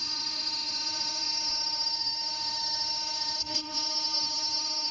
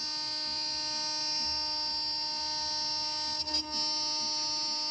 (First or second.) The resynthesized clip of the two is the first